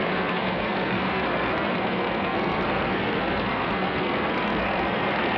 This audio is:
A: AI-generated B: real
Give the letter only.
A